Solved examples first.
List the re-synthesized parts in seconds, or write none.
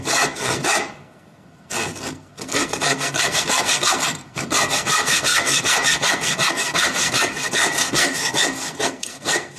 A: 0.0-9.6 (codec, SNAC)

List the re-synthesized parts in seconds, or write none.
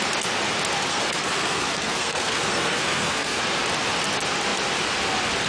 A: 0.9-3.4 (codec, SNAC)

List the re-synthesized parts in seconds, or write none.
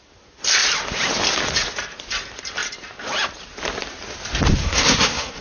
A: 4.6-5.4 (codec, SNAC)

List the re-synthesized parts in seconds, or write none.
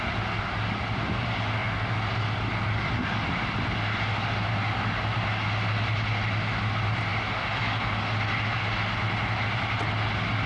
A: none